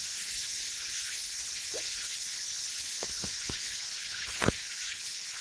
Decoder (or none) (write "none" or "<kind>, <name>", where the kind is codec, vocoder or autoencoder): codec, HILCodec